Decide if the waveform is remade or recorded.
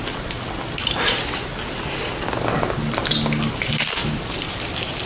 recorded